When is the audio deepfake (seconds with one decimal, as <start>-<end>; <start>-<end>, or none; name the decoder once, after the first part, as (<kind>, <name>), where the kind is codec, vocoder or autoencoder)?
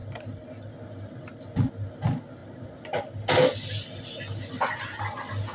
none